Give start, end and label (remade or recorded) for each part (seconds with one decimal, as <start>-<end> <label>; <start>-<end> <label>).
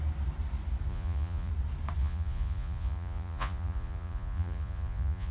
0.0-0.9 recorded; 0.9-1.5 remade; 1.5-2.0 recorded; 2.0-5.3 remade